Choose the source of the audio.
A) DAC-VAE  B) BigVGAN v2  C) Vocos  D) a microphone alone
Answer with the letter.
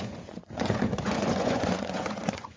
C